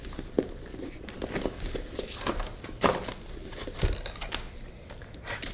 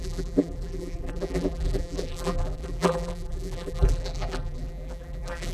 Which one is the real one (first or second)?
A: first